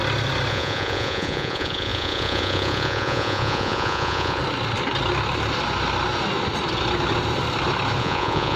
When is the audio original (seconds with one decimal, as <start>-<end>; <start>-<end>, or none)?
0.0-0.5; 4.4-8.0